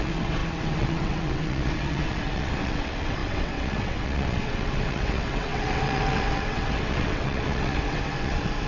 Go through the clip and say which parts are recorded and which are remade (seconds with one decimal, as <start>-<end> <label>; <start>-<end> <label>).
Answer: 0.0-8.7 remade